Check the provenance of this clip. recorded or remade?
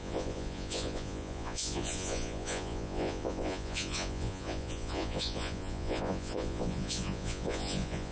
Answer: remade